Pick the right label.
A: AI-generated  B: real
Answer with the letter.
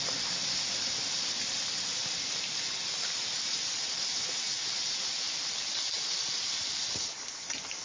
B